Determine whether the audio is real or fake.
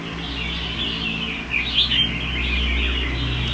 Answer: real